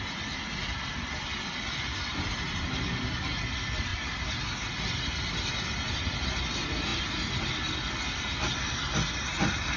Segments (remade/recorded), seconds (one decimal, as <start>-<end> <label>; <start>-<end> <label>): 0.0-9.8 recorded

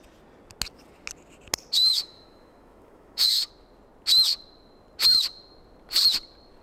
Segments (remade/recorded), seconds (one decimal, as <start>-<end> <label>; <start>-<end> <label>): 0.0-1.9 recorded; 1.9-3.5 remade; 3.5-6.6 recorded

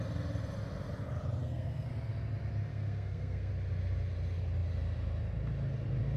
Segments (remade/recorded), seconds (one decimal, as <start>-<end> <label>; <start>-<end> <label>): 0.0-1.4 recorded; 1.4-1.9 remade; 1.9-2.7 recorded; 2.7-3.5 remade; 3.5-6.2 recorded

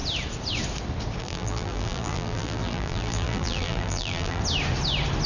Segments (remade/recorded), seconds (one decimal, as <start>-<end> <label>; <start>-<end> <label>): 0.0-1.2 recorded; 1.2-4.4 remade; 4.4-5.3 recorded

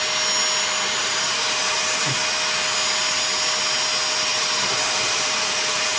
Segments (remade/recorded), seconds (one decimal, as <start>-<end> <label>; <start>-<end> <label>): 0.0-1.0 recorded; 1.0-2.0 remade; 2.0-4.3 recorded; 4.3-6.0 remade